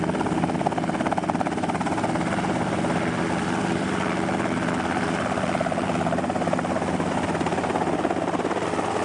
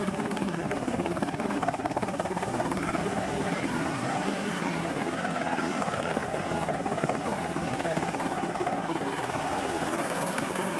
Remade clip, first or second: second